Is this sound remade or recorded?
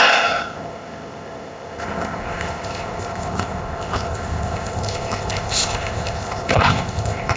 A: remade